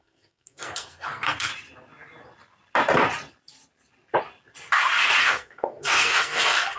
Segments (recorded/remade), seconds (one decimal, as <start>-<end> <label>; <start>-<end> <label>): 0.0-1.5 remade; 1.5-5.2 recorded; 5.2-6.8 remade